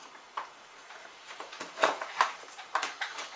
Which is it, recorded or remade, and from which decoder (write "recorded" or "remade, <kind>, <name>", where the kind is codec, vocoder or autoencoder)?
remade, vocoder, Vocos